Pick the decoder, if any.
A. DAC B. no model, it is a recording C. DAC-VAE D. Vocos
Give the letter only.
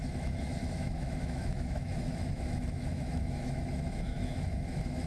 C